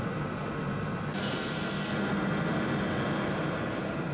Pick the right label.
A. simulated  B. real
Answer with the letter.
B